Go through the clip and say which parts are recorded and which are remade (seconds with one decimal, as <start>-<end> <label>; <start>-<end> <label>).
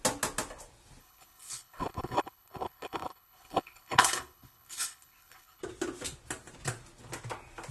0.0-1.0 recorded; 1.0-5.6 remade; 5.6-7.7 recorded